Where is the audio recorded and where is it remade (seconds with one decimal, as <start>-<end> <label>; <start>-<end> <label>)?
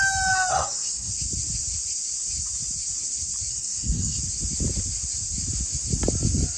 0.0-0.5 recorded; 0.5-1.1 remade; 1.1-3.5 recorded; 3.5-4.2 remade; 4.2-6.6 recorded